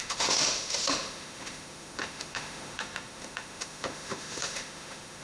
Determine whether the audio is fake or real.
fake